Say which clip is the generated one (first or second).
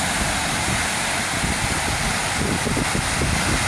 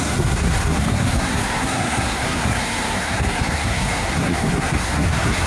second